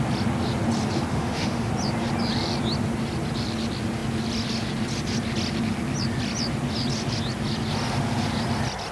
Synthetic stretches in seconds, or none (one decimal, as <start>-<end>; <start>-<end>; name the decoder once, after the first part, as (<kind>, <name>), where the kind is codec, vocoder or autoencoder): 1.1-1.7 (autoencoder, DAC-VAE)